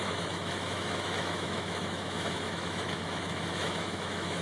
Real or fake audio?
fake